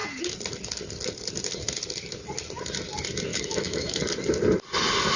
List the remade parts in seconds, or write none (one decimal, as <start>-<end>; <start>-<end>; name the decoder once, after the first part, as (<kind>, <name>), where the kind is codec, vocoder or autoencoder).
3.3-4.0 (autoencoder, DAC-VAE)